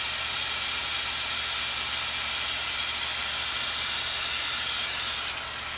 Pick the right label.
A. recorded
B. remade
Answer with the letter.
A